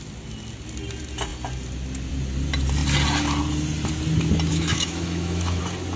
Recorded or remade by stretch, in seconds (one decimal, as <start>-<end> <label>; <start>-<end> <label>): 0.0-4.5 recorded; 4.5-5.6 remade; 5.6-6.0 recorded